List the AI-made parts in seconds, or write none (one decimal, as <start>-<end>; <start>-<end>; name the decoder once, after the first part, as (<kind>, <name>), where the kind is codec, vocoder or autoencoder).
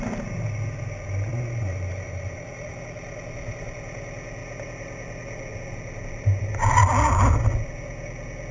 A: 1.3-2.5 (vocoder, BigVGAN v2)